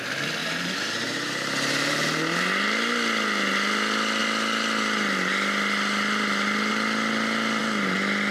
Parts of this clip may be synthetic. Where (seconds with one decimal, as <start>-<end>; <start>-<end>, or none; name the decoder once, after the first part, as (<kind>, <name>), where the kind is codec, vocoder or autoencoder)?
0.4-2.5 (vocoder, BigVGAN v2)